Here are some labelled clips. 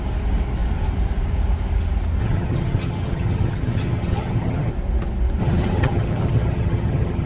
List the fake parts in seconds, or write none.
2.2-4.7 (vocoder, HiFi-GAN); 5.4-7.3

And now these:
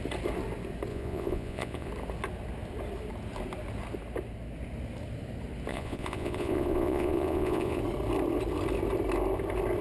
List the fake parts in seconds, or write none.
0.9-1.9 (vocoder, Vocos); 5.7-7.8

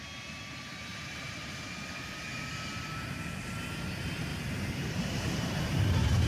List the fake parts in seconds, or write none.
0.9-1.7 (vocoder, BigVGAN v2); 2.3-3.2; 4.3-6.3